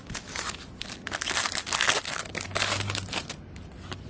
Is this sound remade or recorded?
recorded